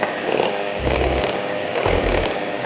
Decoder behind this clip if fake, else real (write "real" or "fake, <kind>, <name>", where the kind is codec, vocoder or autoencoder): fake, codec, DAC